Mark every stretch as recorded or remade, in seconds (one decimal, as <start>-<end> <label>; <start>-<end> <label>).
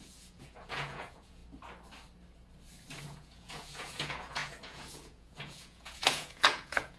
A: 0.0-1.4 remade; 1.4-3.0 recorded; 3.0-7.0 remade